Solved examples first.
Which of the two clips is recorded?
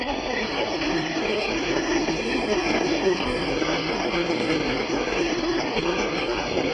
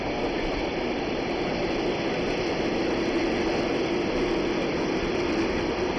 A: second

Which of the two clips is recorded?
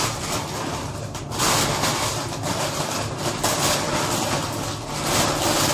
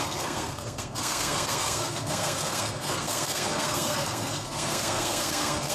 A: first